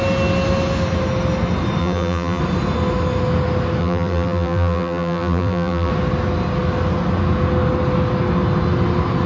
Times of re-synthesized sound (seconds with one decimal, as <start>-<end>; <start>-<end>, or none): 1.8-2.4; 3.8-5.9